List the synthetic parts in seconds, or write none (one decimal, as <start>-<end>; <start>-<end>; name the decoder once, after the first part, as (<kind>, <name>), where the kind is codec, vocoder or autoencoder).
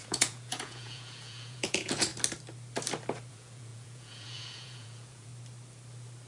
0.0-2.1 (vocoder, Vocos); 3.3-5.3